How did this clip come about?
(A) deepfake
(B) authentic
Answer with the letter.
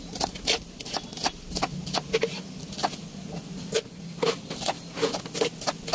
B